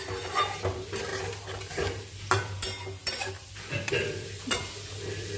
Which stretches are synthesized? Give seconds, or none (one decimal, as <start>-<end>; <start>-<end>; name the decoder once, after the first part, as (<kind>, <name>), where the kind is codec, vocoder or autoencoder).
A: 3.0-4.4 (vocoder, BigVGAN v2)